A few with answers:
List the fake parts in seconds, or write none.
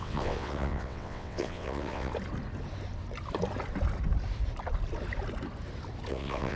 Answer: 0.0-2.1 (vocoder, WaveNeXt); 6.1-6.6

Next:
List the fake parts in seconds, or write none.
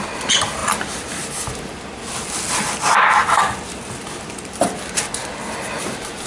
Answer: none